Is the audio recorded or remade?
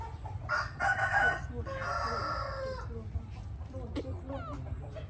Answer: recorded